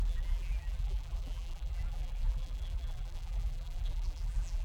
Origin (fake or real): fake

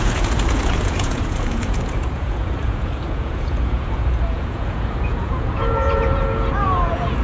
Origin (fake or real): fake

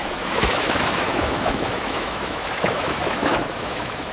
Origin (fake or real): fake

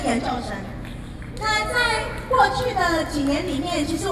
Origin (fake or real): real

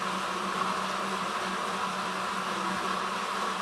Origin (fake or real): real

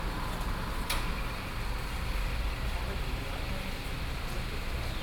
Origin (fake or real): real